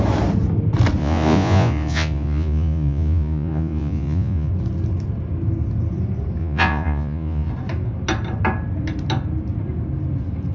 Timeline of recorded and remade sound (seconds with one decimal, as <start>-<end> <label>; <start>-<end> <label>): 0.0-1.0 recorded; 1.0-4.5 remade; 4.5-6.4 recorded; 6.4-7.5 remade; 7.5-10.5 recorded